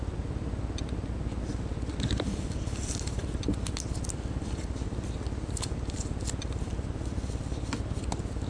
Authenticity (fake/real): real